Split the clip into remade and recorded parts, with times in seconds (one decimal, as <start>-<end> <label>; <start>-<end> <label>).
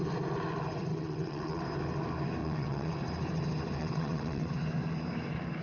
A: 0.0-0.9 recorded; 0.9-1.6 remade; 1.6-2.4 recorded; 2.4-2.9 remade; 2.9-3.8 recorded; 3.8-4.5 remade; 4.5-5.6 recorded